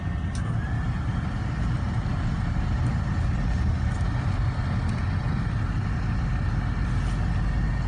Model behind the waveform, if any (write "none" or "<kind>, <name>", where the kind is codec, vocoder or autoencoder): none